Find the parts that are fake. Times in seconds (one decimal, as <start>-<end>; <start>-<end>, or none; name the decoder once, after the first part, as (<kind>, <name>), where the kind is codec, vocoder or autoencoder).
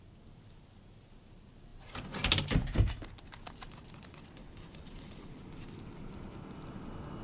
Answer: 4.4-5.3 (vocoder, BigVGAN v2)